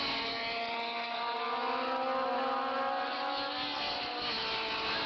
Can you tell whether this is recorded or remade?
recorded